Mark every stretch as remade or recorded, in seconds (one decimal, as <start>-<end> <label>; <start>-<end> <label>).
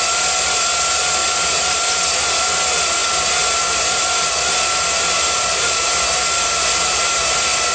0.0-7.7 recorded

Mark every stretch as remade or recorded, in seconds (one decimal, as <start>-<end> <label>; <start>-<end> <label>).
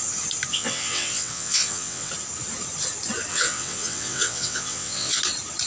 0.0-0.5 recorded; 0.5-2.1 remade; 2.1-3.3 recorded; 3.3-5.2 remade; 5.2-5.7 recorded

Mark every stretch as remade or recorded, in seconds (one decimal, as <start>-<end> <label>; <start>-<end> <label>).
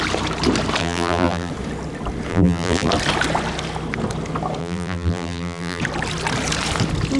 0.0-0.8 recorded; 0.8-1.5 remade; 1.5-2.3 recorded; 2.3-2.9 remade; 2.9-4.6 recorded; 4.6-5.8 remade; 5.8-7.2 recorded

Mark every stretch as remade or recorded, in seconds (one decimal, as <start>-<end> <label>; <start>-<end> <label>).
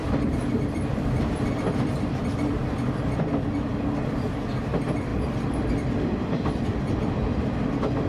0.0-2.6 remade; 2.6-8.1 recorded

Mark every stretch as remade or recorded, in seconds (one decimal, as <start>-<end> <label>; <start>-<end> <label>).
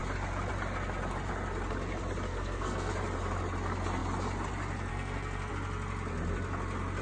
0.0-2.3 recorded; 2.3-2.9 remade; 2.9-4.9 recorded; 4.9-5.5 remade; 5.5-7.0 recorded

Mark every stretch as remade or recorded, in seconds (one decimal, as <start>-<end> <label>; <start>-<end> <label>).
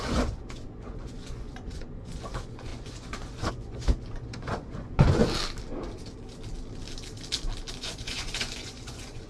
0.0-5.2 remade; 5.2-7.8 recorded; 7.8-9.3 remade